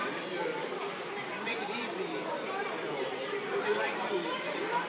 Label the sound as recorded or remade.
remade